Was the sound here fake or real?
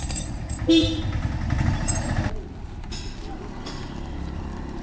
fake